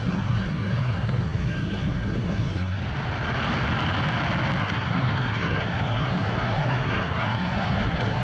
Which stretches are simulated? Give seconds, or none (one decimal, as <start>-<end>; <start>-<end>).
0.0-2.8; 4.6-8.2